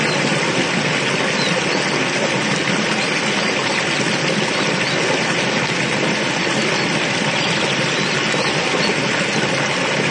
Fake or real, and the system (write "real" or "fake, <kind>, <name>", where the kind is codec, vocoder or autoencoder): real